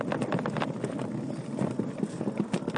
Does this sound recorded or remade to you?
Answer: recorded